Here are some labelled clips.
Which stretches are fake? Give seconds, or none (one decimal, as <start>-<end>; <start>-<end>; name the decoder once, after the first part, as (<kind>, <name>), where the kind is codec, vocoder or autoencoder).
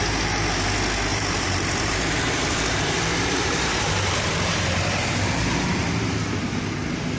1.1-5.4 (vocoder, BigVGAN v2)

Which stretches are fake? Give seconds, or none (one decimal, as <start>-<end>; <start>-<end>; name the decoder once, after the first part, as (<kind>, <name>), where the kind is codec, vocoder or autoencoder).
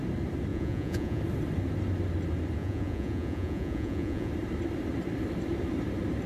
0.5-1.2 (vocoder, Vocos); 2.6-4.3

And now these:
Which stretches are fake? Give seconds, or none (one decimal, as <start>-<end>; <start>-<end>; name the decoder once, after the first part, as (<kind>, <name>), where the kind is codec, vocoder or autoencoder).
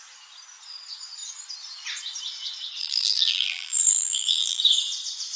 2.8-4.6 (vocoder, BigVGAN v2)